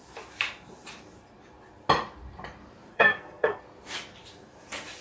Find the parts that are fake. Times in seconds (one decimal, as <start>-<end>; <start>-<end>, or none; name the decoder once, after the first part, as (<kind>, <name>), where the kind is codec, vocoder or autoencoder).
2.9-3.6 (codec, SNAC)